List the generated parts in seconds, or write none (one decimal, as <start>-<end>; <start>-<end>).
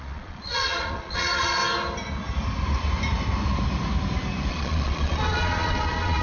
0.0-1.6; 4.5-6.2